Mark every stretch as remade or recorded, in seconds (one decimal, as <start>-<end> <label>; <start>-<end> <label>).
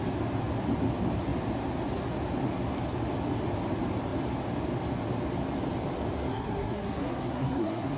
0.0-6.3 recorded; 6.3-8.0 remade